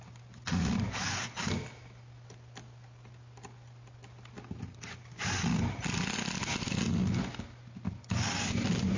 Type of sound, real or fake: real